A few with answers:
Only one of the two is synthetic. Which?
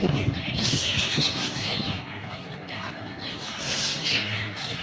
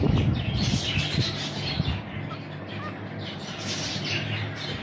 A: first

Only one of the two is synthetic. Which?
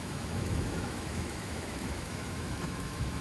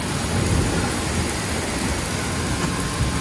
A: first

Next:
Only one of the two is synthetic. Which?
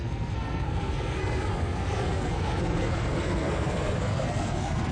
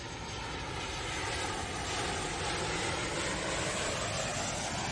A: first